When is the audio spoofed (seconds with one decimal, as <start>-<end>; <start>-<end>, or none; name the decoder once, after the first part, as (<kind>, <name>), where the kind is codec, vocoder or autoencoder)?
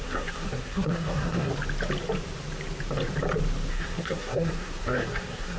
0.0-1.5 (codec, SNAC); 3.7-5.6